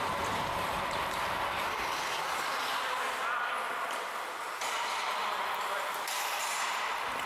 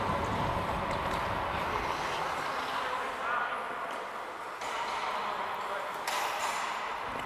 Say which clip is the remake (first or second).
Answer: first